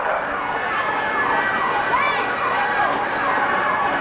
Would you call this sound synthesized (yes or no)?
no